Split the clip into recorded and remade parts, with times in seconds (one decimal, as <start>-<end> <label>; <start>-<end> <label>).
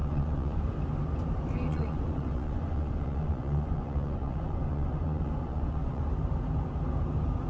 0.0-0.6 remade; 0.6-1.7 recorded; 1.7-6.0 remade; 6.0-7.5 recorded